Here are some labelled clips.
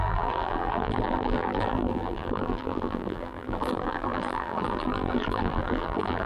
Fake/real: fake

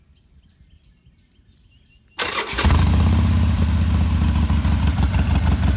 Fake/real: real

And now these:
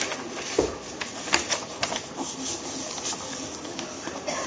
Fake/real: real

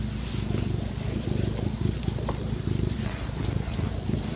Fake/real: real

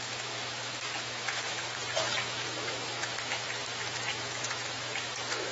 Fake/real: fake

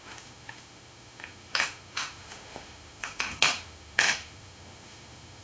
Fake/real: fake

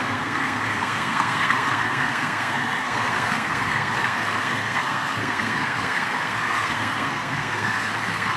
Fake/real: fake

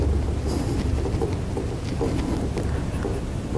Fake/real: real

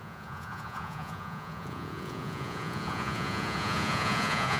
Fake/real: fake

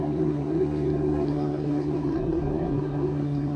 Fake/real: fake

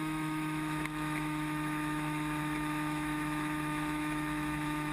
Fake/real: fake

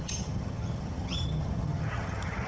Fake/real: fake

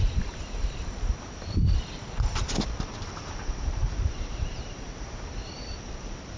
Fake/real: fake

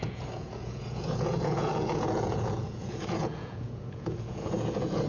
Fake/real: fake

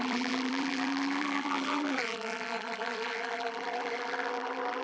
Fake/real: fake